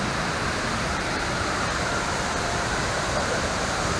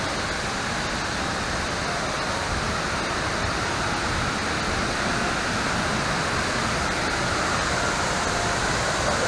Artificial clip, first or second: first